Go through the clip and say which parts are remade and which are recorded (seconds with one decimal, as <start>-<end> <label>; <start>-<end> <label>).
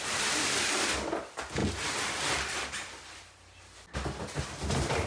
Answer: 0.0-5.1 recorded